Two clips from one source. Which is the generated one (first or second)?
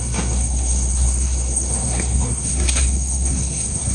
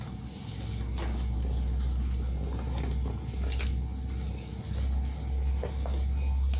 first